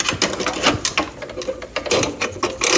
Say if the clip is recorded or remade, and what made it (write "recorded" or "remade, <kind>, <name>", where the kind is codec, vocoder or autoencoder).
recorded